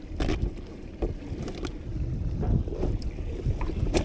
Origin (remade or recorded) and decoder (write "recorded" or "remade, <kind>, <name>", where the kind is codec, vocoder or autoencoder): recorded